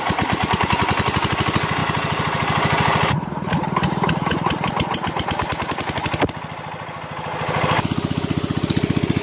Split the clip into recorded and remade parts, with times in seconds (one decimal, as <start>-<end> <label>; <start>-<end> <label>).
0.0-9.2 recorded

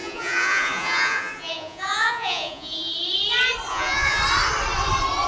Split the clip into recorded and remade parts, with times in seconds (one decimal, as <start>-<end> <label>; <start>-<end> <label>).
0.0-2.9 remade; 2.9-3.7 recorded; 3.7-4.2 remade; 4.2-5.3 recorded